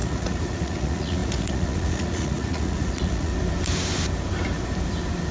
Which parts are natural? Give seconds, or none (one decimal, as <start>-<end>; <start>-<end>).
3.3-5.3